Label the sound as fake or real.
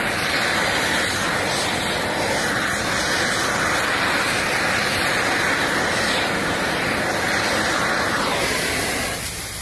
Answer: real